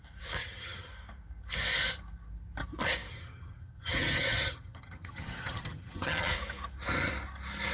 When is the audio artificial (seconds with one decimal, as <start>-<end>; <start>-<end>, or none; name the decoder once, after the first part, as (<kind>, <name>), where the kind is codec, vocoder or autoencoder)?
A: 0.4-0.9 (vocoder, HiFi-GAN); 3.1-6.3